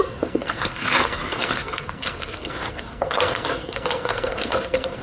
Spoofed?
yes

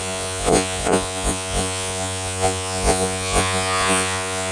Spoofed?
yes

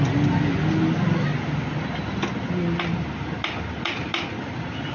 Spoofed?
no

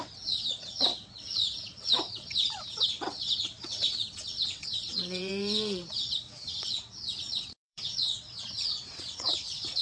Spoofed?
yes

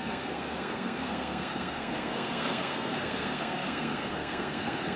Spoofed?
yes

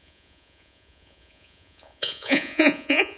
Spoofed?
yes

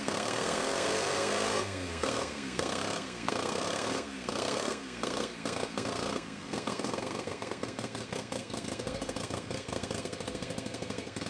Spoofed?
yes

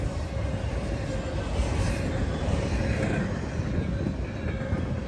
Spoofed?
no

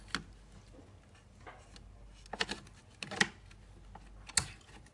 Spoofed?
no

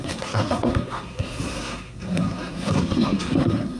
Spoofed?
yes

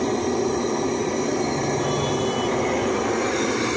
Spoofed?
no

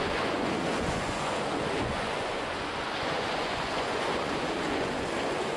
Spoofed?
yes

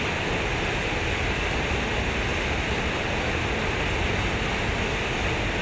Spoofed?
no